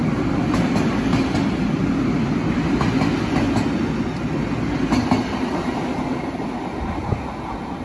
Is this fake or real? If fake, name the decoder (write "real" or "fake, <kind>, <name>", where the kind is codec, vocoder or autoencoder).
real